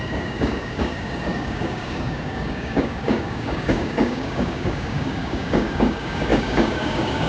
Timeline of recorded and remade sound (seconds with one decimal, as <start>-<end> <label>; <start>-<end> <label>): 0.0-7.3 remade